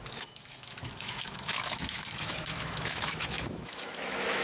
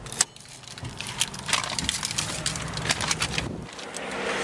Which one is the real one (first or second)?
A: second